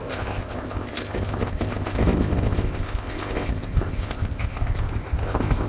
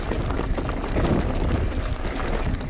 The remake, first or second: first